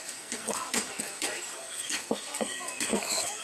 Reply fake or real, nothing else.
fake